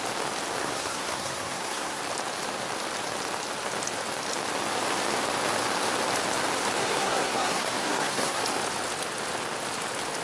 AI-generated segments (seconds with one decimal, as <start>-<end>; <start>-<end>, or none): 0.6-2.0; 6.8-8.4